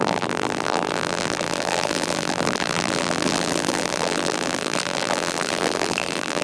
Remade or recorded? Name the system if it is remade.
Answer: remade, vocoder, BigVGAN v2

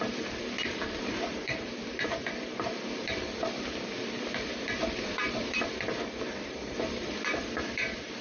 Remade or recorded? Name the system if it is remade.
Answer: remade, vocoder, BigVGAN v2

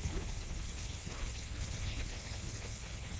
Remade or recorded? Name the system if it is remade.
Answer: remade, codec, HILCodec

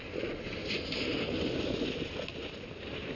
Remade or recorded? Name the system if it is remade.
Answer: recorded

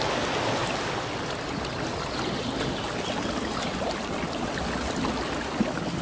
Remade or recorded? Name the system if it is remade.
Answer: recorded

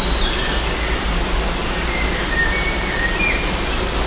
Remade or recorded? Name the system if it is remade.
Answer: recorded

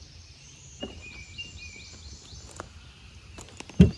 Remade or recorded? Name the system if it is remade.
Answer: recorded